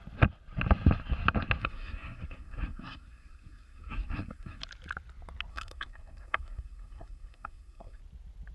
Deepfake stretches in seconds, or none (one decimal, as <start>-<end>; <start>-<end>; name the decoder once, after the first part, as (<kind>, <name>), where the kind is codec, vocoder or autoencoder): 1.6-4.6 (codec, SNAC); 5.5-8.0